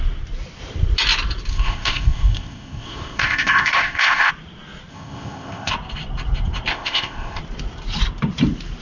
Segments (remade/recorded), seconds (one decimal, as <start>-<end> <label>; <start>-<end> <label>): 0.0-1.5 recorded; 1.5-4.3 remade; 4.3-4.9 recorded; 4.9-5.7 remade; 5.7-6.7 recorded; 6.7-7.4 remade; 7.4-8.8 recorded